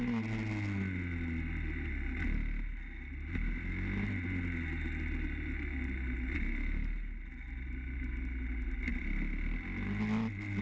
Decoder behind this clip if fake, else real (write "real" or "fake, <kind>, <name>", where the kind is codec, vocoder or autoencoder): real